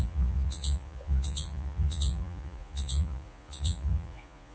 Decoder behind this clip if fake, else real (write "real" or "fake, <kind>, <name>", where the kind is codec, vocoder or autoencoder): fake, vocoder, Vocos